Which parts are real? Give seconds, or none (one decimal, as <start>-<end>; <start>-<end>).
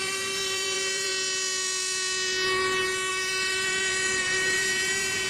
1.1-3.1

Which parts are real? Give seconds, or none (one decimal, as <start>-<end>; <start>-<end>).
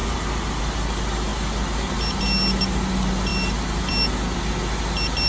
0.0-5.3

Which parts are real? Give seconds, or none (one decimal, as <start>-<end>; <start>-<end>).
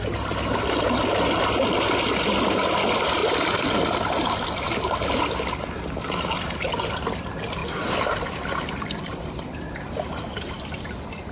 0.0-3.2; 5.2-7.6; 10.5-11.3